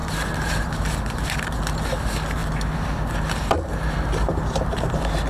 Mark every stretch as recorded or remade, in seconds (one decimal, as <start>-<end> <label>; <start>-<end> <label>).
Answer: 0.0-0.9 remade; 0.9-5.3 recorded